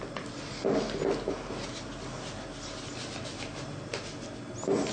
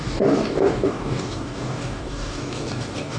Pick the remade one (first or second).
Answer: second